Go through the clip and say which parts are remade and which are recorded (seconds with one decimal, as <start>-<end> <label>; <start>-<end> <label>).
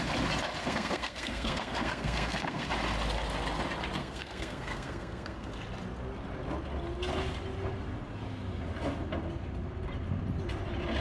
0.0-0.6 recorded; 0.6-2.7 remade; 2.7-4.0 recorded; 4.0-5.5 remade; 5.5-11.0 recorded